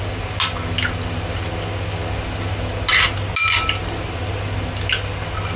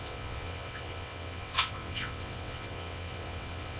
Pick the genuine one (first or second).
first